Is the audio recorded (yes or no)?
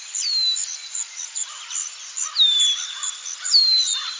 yes